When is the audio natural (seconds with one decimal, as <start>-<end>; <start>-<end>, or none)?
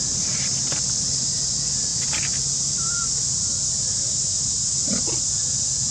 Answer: 0.0-5.9